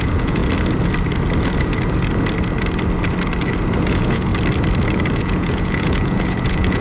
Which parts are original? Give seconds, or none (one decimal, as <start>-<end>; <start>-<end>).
0.4-3.8; 4.3-5.2